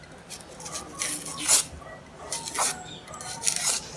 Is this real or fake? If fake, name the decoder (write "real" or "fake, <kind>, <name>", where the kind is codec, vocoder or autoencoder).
real